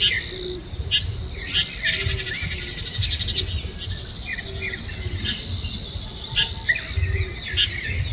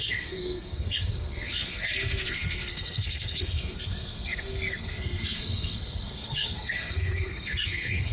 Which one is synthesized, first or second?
second